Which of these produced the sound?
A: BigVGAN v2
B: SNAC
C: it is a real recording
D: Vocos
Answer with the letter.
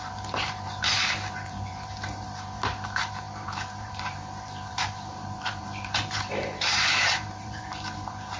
A